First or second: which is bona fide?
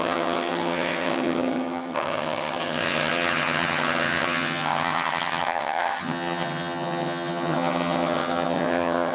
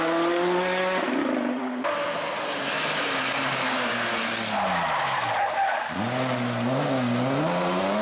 second